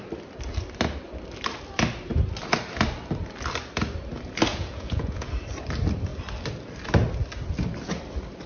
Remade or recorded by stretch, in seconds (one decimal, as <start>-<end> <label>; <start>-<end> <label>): 0.0-4.5 recorded; 4.5-5.3 remade; 5.3-8.5 recorded